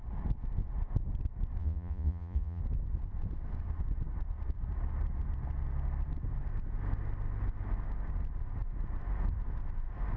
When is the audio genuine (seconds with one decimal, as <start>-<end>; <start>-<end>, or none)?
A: 0.0-1.6; 2.6-10.2